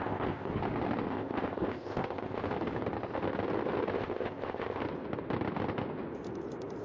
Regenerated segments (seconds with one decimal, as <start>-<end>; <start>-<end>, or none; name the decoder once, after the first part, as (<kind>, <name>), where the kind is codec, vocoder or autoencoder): 0.0-0.5 (codec, ZipCodec); 1.1-2.4; 3.9-4.8